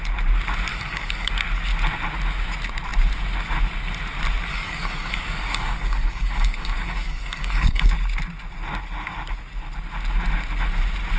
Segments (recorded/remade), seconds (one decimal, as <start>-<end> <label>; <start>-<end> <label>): 0.0-0.7 recorded; 0.7-1.3 remade; 1.3-4.5 recorded; 4.5-7.9 remade; 7.9-11.2 recorded